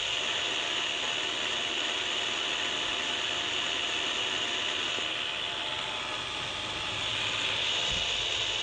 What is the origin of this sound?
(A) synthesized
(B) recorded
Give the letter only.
B